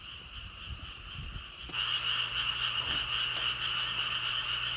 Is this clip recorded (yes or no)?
yes